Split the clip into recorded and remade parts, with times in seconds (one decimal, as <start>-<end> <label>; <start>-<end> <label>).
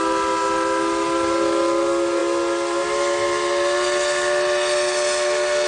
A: 0.0-5.7 recorded